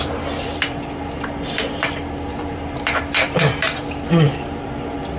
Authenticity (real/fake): fake